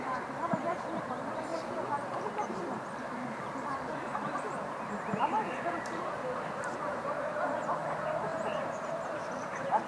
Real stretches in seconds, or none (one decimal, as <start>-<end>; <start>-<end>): none